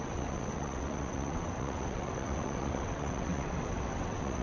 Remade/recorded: remade